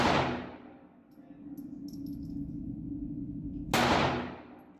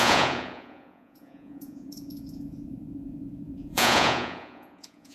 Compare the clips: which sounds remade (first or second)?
second